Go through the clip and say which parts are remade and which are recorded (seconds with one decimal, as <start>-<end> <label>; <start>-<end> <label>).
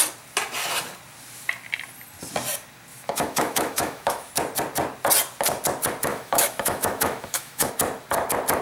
0.0-2.9 recorded; 2.9-4.3 remade; 4.3-6.1 recorded; 6.1-7.7 remade; 7.7-8.6 recorded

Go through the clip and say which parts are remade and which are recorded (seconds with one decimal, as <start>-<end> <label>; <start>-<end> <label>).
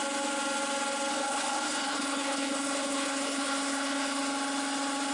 0.0-1.1 recorded; 1.1-4.2 remade; 4.2-5.1 recorded